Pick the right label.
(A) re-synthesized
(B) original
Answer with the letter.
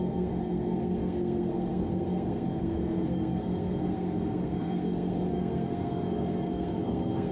A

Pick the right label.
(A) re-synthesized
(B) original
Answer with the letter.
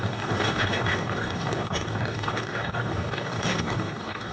A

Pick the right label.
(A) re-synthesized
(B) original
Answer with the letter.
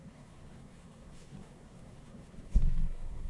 A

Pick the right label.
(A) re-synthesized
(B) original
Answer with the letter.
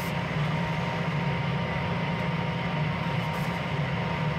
B